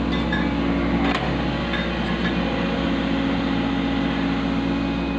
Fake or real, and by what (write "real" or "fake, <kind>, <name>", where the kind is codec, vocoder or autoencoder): real